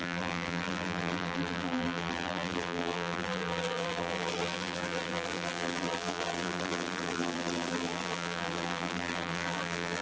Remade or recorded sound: remade